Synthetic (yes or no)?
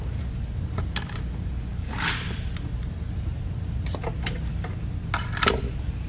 no